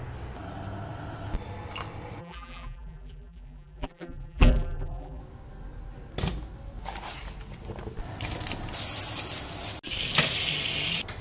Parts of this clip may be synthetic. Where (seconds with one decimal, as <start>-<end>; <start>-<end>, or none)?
2.2-5.2